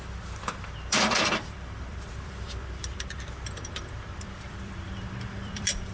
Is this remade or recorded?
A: remade